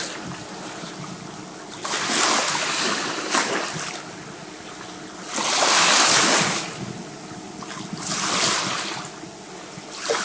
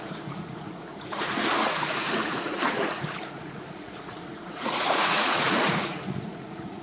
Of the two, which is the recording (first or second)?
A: first